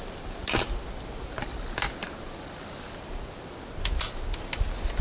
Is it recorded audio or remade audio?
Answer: recorded